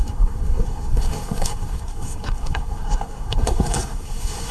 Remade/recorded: remade